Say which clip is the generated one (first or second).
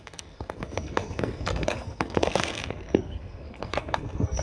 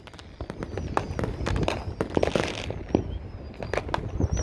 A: first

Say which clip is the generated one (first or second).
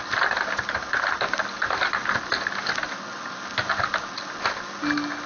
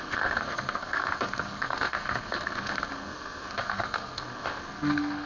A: second